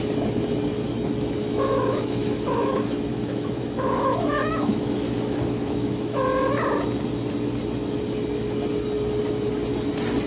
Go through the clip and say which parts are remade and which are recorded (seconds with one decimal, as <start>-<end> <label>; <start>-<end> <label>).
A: 0.0-1.4 recorded; 1.4-6.2 remade; 6.2-10.3 recorded